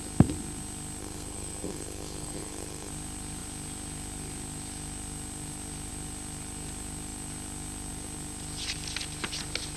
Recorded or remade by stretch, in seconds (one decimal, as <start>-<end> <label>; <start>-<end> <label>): 0.0-1.0 recorded; 1.0-2.9 remade; 2.9-9.8 recorded